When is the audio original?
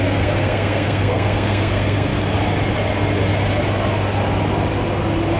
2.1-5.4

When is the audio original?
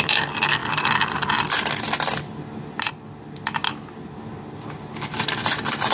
0.0-5.9